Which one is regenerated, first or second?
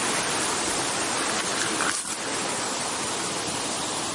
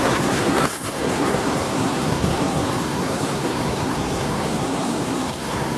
second